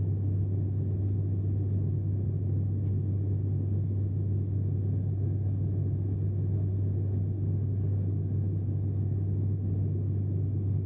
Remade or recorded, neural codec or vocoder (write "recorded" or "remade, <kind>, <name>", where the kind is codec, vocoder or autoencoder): recorded